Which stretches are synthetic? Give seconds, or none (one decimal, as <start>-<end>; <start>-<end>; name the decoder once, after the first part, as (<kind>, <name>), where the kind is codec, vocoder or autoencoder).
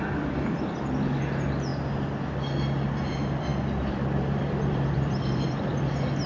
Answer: 3.5-5.6 (vocoder, BigVGAN v2)